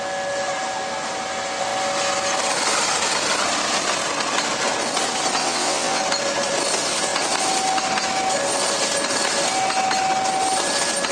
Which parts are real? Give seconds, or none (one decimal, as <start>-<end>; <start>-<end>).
0.0-5.4; 6.0-11.1